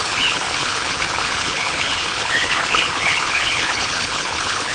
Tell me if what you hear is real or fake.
fake